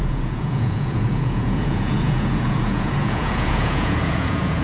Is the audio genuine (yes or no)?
no